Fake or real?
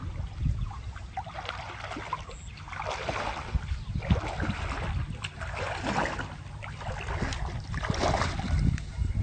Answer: real